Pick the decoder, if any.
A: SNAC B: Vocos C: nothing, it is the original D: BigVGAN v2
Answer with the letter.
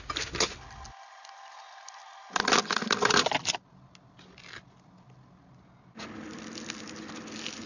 C